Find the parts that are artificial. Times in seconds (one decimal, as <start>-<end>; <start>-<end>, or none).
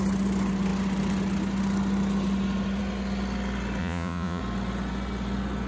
3.8-4.4